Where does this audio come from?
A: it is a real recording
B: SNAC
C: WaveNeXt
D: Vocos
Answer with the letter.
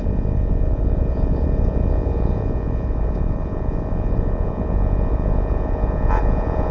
D